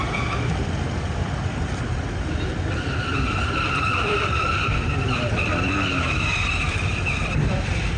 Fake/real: fake